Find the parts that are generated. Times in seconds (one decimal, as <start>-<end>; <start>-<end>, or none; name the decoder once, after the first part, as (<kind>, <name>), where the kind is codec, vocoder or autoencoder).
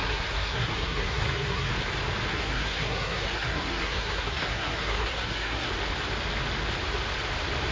0.0-1.7 (codec, SNAC); 2.3-5.7